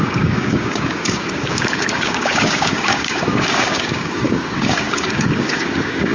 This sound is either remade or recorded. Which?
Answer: remade